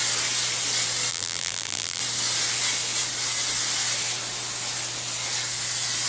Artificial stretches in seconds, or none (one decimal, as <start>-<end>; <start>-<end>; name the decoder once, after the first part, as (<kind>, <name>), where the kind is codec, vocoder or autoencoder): 1.1-2.0 (vocoder, BigVGAN v2)